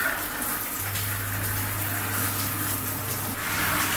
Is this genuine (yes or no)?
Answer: yes